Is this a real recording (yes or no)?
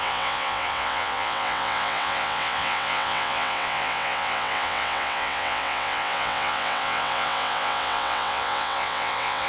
no